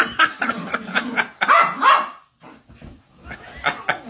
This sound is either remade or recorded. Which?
recorded